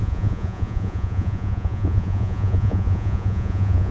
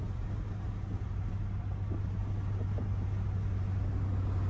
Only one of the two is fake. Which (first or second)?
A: first